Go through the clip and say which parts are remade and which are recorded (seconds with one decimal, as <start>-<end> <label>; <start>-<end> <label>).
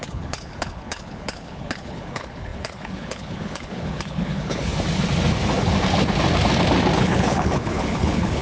0.0-4.7 remade; 4.7-7.0 recorded; 7.0-8.4 remade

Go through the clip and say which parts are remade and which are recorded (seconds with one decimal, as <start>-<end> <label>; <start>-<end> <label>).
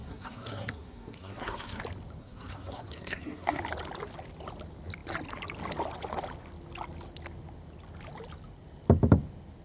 0.0-1.8 remade; 1.8-2.2 recorded; 2.2-3.6 remade; 3.6-9.6 recorded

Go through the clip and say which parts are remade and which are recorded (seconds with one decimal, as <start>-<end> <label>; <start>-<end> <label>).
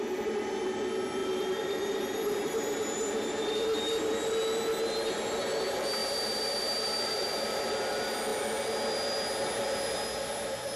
0.0-1.2 recorded; 1.2-4.3 remade; 4.3-6.0 recorded; 6.0-7.7 remade; 7.7-10.8 recorded